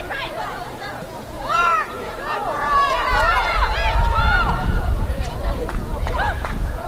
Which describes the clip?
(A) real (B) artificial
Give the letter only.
B